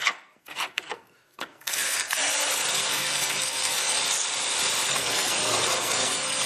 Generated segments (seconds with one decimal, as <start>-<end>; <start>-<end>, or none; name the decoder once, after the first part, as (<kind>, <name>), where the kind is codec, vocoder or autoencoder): 0.0-2.2 (codec, SNAC); 2.8-4.0; 4.9-6.5